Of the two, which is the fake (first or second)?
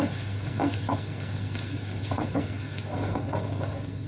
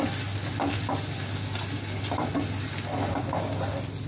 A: first